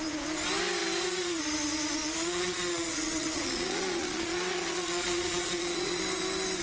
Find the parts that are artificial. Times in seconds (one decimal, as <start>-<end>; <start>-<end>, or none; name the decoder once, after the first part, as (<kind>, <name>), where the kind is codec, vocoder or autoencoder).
2.0-6.0 (vocoder, Vocos)